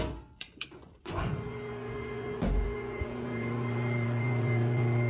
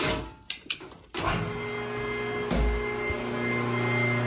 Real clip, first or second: second